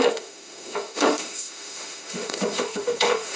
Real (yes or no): no